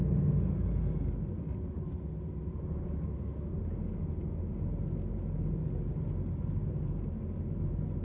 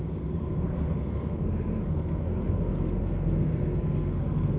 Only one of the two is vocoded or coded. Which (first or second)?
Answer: second